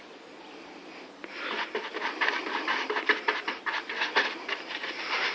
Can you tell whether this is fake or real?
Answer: fake